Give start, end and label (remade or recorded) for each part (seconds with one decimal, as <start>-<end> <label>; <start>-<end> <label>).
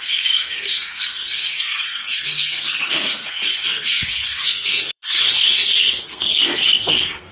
0.0-7.3 remade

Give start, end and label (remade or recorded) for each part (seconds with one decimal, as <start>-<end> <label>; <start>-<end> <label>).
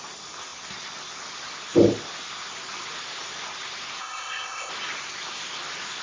0.0-4.0 recorded; 4.0-4.7 remade; 4.7-6.0 recorded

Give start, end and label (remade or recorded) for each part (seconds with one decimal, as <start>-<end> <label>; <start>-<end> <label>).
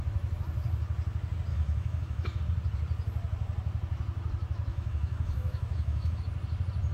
0.0-1.5 recorded; 1.5-2.4 remade; 2.4-4.7 recorded; 4.7-6.2 remade; 6.2-6.9 recorded